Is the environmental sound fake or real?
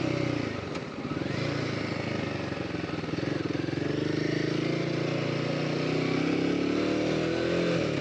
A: real